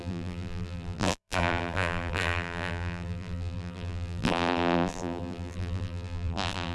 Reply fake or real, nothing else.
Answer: fake